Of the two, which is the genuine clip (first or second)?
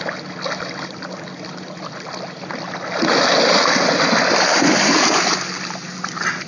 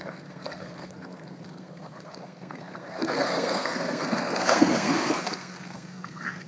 first